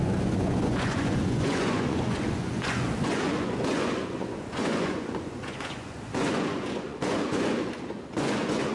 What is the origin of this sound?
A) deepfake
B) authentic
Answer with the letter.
A